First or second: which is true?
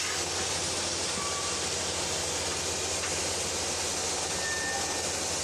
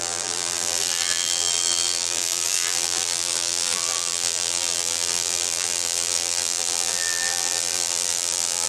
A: first